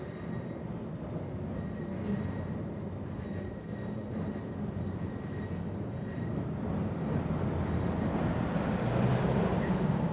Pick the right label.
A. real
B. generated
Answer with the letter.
A